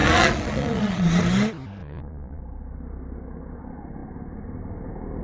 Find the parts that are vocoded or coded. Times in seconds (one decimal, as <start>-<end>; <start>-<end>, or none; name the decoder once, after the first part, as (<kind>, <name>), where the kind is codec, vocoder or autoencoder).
0.0-1.2 (vocoder, Vocos); 1.8-2.4